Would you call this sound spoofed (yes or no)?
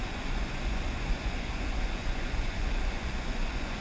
yes